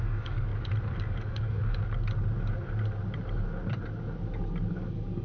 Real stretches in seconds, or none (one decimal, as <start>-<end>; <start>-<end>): 0.5-1.0; 1.6-4.7